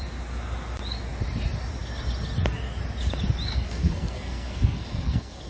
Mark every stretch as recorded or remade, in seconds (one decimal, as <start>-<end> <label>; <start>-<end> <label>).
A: 0.0-3.5 recorded; 3.5-5.5 remade